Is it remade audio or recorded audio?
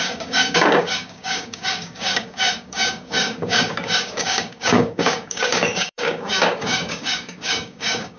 remade